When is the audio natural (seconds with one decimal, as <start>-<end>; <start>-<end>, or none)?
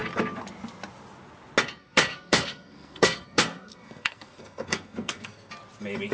0.0-1.8; 5.5-6.1